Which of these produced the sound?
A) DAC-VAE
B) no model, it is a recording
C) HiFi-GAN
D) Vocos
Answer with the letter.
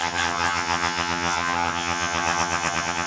C